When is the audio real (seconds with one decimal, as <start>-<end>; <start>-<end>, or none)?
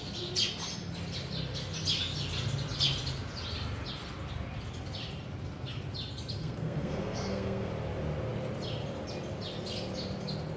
0.0-6.4; 7.7-10.6